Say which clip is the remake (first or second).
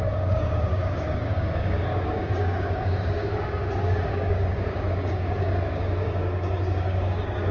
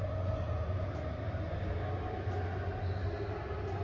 first